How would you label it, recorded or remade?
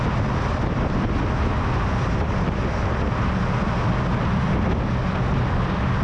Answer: recorded